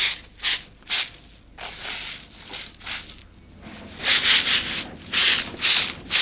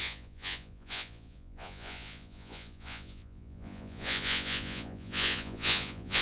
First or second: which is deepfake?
second